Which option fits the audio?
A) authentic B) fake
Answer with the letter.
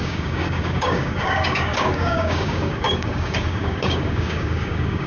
B